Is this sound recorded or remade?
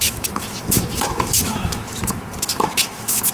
remade